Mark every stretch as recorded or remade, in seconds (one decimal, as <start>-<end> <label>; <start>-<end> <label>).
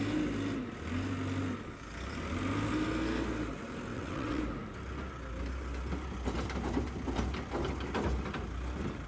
0.0-3.9 recorded; 3.9-4.4 remade; 4.4-9.1 recorded